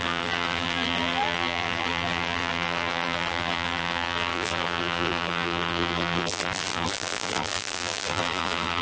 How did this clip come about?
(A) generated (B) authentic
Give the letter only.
A